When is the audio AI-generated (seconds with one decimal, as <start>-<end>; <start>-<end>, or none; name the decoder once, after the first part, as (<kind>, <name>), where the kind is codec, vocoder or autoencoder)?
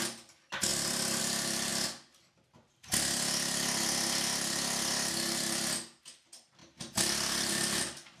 0.0-0.7 (vocoder, BigVGAN v2); 1.2-1.7; 6.0-6.6; 7.1-8.2